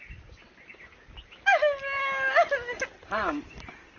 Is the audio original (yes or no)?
yes